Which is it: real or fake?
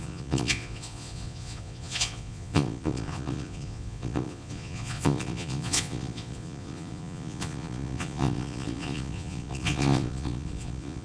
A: fake